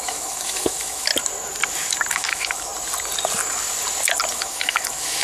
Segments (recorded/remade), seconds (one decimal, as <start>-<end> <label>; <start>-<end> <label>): 0.0-1.1 remade; 1.1-2.1 recorded; 2.1-2.7 remade; 2.7-4.3 recorded; 4.3-5.2 remade